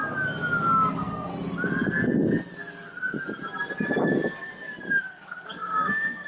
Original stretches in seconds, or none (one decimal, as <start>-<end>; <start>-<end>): 0.0-0.9; 1.3-5.0